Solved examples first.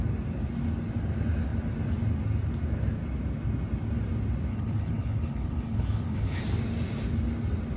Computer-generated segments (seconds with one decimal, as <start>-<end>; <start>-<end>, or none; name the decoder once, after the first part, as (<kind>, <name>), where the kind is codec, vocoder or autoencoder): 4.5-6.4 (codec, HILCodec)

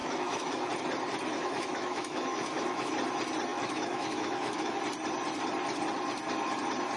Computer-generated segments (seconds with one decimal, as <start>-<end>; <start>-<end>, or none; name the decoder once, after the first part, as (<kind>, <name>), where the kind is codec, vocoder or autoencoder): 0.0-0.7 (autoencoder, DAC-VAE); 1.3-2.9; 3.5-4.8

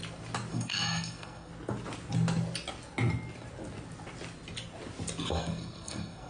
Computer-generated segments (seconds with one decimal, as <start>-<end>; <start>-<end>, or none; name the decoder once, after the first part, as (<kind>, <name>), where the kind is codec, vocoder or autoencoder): 0.5-1.5 (codec, SNAC); 5.3-6.3

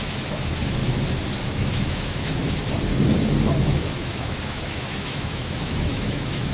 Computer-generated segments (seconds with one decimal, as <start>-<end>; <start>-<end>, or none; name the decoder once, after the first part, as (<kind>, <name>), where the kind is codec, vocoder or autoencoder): 0.0-0.8 (autoencoder, DAC-VAE); 1.5-2.4; 3.6-6.5